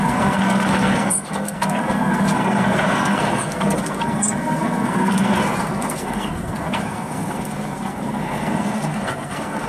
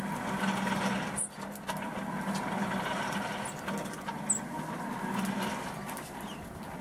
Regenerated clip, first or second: first